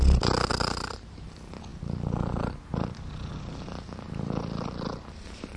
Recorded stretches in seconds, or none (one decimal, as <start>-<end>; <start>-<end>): 0.0-5.6